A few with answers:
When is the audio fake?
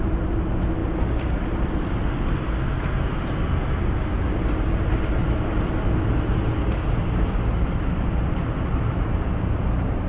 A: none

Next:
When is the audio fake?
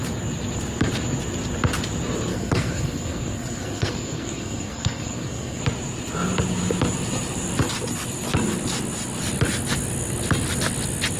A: 2.3-5.6 (codec, SNAC)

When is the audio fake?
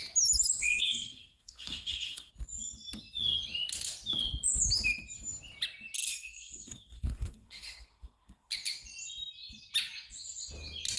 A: 0.6-2.3 (codec, SNAC); 6.1-8.5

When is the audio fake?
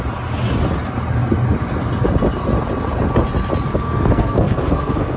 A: 3.7-5.2 (codec, SNAC)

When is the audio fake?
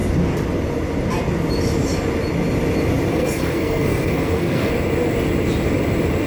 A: 3.1-4.7 (codec, SNAC)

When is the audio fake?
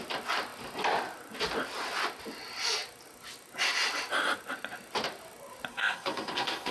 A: 5.7-6.7 (codec, SNAC)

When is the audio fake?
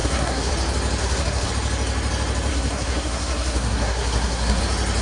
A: 0.0-0.5 (codec, SNAC); 1.0-1.5; 2.5-4.6